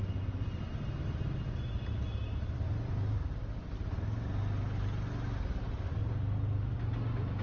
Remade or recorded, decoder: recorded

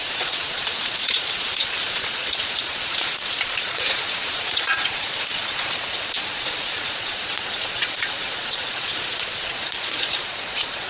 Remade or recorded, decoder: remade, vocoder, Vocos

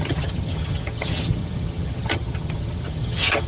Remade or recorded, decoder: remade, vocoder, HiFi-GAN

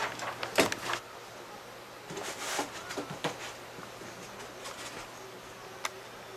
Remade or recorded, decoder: recorded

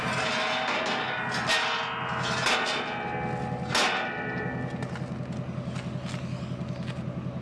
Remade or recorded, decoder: recorded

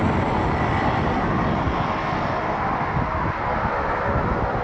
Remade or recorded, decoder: recorded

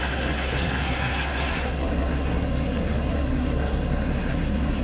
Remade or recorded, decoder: remade, codec, SNAC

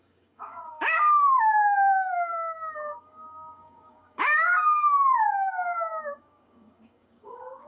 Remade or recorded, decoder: remade, codec, DAC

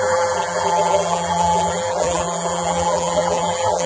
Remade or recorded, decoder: remade, vocoder, BigVGAN v2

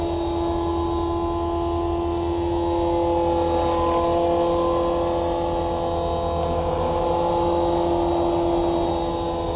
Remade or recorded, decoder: recorded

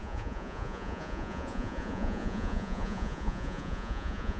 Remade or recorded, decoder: remade, vocoder, Vocos